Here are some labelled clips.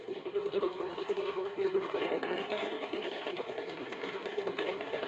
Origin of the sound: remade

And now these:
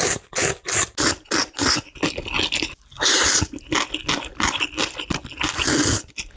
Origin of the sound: recorded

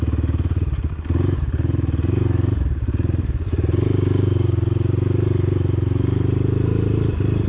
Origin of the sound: recorded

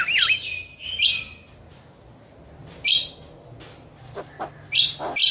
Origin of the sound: recorded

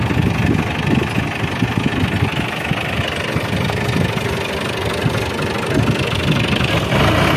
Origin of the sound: recorded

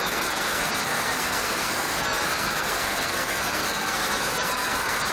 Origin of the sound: remade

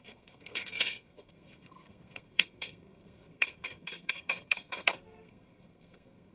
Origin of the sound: remade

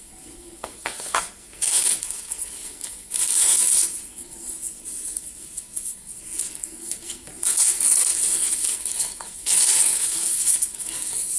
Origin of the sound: remade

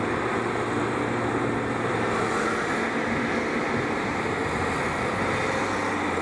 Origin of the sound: recorded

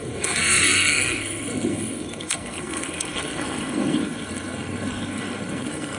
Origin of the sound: remade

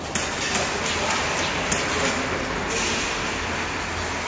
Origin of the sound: recorded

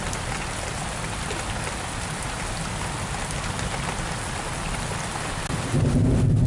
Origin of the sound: recorded